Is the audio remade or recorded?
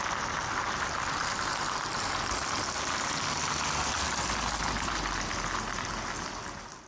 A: recorded